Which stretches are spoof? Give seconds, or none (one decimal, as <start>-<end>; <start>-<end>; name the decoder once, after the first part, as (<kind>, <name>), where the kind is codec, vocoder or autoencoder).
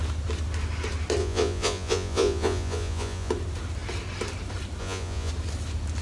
1.2-3.3 (vocoder, Vocos); 4.8-5.3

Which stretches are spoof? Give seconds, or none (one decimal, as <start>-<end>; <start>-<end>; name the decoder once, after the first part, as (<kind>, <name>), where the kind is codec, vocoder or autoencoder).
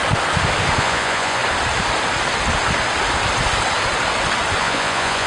0.8-1.4 (vocoder, Vocos); 4.6-5.3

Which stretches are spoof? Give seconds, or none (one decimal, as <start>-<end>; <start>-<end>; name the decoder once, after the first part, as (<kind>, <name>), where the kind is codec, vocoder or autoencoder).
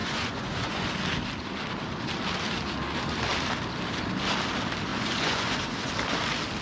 0.0-0.9 (vocoder, Vocos); 4.9-5.9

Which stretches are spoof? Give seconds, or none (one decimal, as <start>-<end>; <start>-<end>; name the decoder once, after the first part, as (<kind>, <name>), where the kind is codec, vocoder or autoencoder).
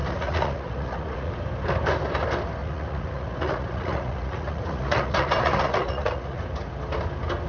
0.0-1.3 (vocoder, Vocos); 2.6-6.4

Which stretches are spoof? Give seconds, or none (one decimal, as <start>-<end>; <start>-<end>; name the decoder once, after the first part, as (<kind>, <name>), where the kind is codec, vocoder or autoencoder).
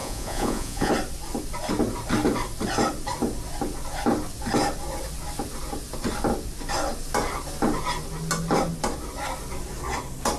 0.0-0.9 (vocoder, Vocos)